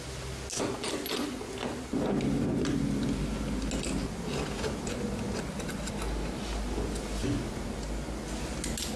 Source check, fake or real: real